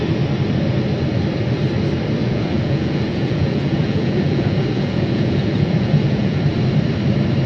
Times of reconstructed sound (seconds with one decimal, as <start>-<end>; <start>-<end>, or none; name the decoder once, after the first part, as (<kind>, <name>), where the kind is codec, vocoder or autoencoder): 2.2-6.4 (vocoder, Vocos)